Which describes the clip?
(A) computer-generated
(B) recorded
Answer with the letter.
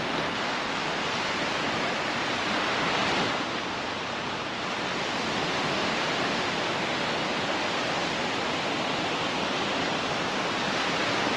B